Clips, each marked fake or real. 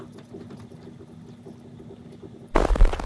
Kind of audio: real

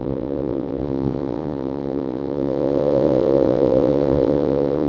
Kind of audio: fake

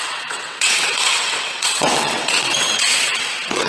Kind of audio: fake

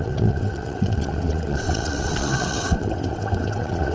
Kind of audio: fake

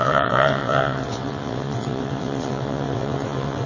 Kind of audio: fake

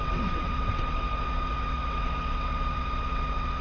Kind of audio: fake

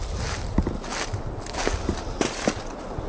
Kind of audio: real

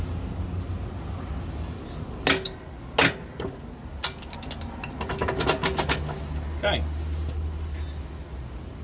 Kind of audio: real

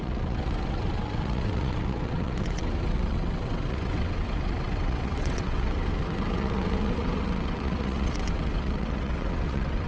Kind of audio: fake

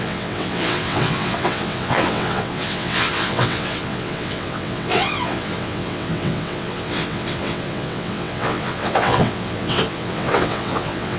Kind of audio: fake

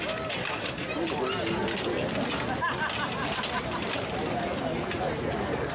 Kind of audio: real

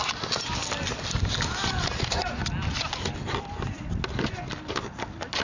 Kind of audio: real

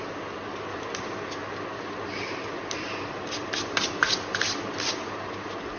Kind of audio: real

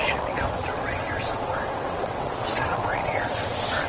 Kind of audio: fake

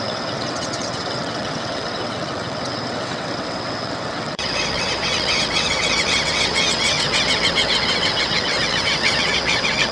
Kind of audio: fake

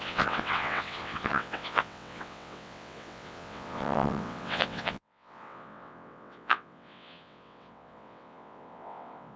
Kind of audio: fake